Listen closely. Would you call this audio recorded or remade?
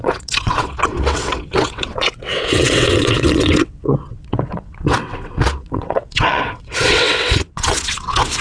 remade